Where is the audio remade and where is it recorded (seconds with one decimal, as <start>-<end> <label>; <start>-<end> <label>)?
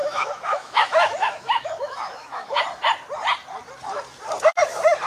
0.0-2.6 remade; 2.6-5.1 recorded